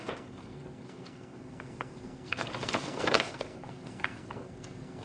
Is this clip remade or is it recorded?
remade